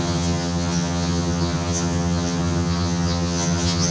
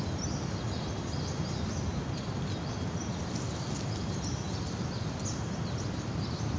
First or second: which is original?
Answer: second